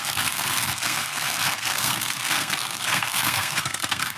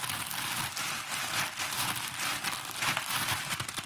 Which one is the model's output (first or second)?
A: first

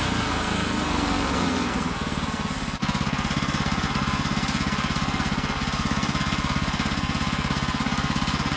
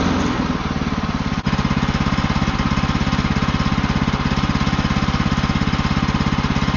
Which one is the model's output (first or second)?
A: first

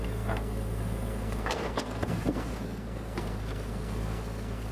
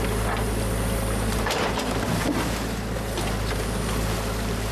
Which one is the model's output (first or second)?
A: first